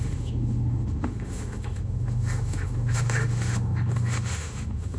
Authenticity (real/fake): fake